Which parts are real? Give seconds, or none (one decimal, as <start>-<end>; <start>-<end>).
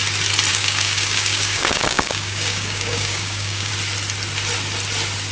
0.0-0.5; 3.7-5.3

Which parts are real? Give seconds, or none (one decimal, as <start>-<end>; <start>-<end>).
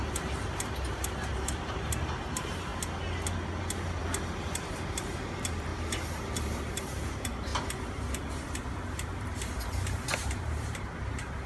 2.7-4.4; 5.7-6.4; 7.5-8.3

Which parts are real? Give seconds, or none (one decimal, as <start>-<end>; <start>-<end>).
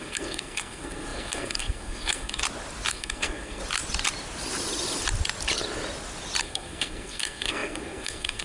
2.4-2.9; 3.6-6.4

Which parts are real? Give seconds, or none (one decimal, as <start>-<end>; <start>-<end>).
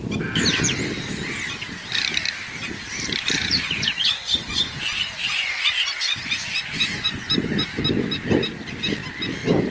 0.0-3.4; 7.3-9.7